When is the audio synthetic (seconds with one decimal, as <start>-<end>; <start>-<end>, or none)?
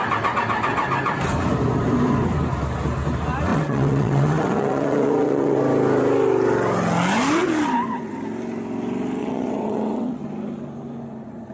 3.5-5.6; 9.2-10.2